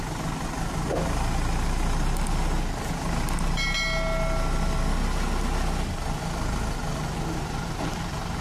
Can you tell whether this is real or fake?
real